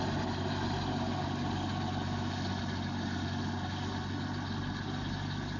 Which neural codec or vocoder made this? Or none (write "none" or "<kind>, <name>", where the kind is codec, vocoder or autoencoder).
none